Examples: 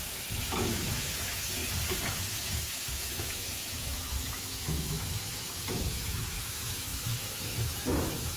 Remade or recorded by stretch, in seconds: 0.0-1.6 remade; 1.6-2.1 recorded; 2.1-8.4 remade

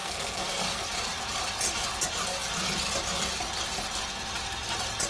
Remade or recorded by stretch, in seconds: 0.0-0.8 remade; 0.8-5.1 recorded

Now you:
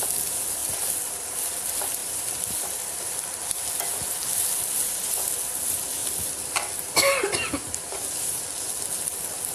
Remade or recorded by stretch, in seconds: 0.0-2.0 recorded; 2.0-3.1 remade; 3.1-6.0 recorded; 6.0-8.5 remade; 8.5-9.5 recorded

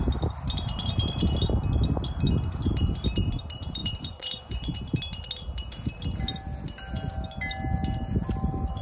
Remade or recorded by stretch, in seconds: 0.0-3.8 recorded; 3.8-4.8 remade; 4.8-8.8 recorded

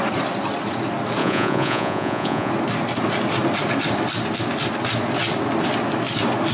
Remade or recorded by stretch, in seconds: 0.0-1.2 recorded; 1.2-2.5 remade; 2.5-6.5 recorded

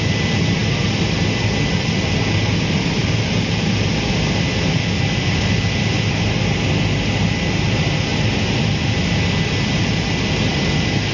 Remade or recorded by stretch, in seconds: 0.0-3.0 recorded; 3.0-3.9 remade; 3.9-11.1 recorded

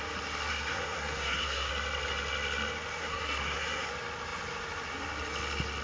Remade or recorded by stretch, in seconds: 0.0-0.5 recorded; 0.5-1.7 remade; 1.7-3.0 recorded; 3.0-3.9 remade; 3.9-5.8 recorded

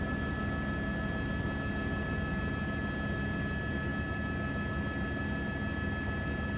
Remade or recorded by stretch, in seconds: 0.0-6.6 recorded